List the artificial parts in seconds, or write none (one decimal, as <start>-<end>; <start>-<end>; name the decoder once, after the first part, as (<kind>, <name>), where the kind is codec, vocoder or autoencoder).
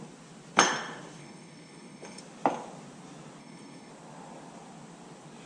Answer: 1.2-2.2 (codec, HILCodec); 3.4-3.9